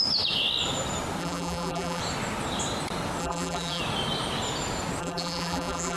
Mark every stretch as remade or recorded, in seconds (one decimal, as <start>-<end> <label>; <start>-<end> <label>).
0.0-1.2 recorded; 1.2-2.0 remade; 2.0-3.2 recorded; 3.2-3.8 remade; 3.8-5.0 recorded; 5.0-6.0 remade